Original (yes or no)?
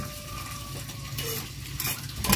yes